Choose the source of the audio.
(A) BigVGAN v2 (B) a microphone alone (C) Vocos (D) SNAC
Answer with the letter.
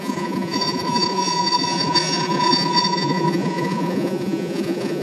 C